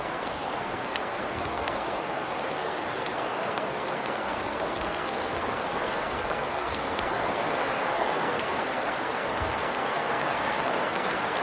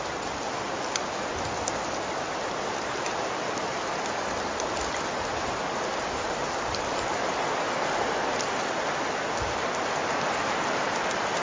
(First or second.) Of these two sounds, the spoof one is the first